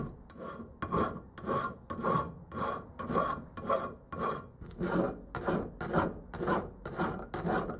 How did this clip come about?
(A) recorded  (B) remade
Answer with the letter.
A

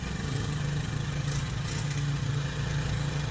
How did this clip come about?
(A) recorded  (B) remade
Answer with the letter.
B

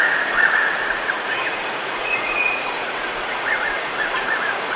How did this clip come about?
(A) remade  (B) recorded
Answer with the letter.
A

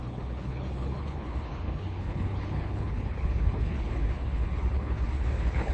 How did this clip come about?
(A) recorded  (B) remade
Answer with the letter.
B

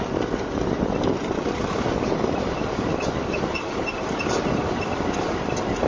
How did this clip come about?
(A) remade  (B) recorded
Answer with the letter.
B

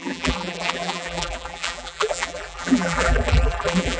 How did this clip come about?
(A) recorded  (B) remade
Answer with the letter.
B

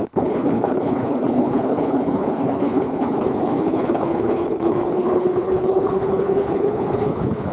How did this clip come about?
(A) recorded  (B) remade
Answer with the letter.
B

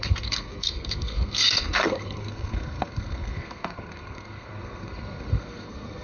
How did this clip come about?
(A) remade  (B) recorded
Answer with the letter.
A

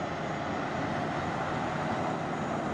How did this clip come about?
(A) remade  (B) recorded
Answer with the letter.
B